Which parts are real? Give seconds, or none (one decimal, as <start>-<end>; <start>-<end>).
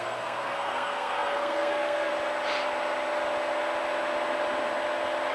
2.1-5.3